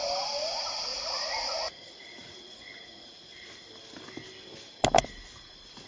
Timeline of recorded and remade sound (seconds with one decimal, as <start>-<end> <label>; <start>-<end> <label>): 0.0-0.9 recorded; 0.9-3.7 remade; 3.7-5.9 recorded